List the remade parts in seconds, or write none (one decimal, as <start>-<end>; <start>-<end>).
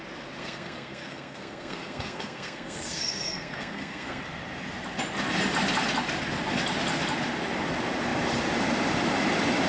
0.4-4.2